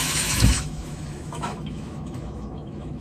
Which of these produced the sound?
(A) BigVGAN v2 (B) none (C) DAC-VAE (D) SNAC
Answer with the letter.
C